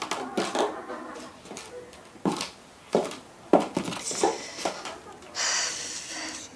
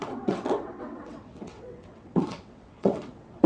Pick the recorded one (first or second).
first